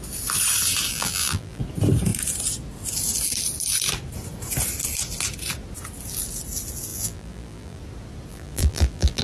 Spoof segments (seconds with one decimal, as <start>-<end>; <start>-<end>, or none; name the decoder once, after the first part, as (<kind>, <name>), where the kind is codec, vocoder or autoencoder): 0.9-1.6 (vocoder, BigVGAN v2); 6.9-7.8; 8.3-9.2